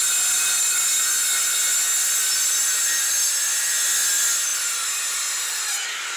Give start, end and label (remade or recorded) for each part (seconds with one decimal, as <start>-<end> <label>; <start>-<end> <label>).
0.0-6.2 recorded

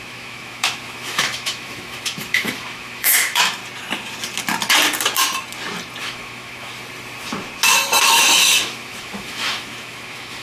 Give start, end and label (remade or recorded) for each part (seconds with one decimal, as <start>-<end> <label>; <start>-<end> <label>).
0.0-3.6 remade; 3.6-6.0 recorded; 6.0-6.8 remade; 6.8-8.0 recorded; 8.0-10.4 remade